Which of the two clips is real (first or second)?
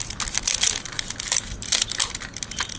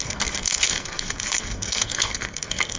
first